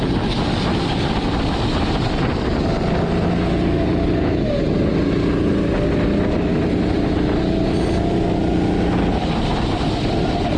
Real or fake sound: real